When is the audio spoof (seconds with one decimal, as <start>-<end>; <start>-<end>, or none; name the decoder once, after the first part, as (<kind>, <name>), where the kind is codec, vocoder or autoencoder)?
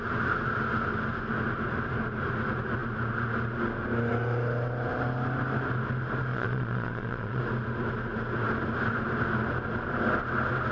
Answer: 6.3-7.4 (vocoder, Vocos)